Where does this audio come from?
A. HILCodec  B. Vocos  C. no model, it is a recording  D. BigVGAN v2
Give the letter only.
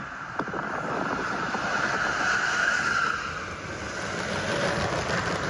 C